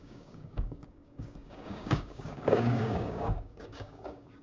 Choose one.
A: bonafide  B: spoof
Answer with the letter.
B